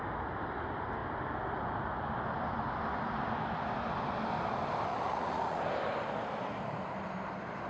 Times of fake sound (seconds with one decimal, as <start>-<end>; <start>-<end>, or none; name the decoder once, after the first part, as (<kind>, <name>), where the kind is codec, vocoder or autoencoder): 4.9-5.6 (vocoder, Vocos)